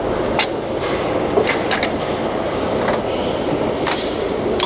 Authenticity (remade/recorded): recorded